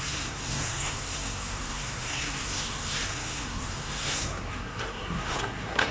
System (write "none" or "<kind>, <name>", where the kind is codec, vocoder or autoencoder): codec, SNAC